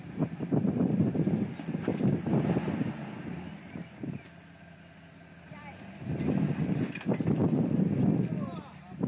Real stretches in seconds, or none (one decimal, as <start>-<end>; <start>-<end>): 0.0-9.1